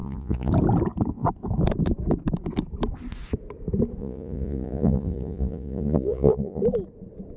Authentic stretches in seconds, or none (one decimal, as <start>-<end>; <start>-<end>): 0.5-4.0; 6.6-7.4